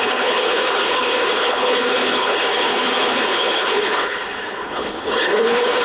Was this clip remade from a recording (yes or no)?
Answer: yes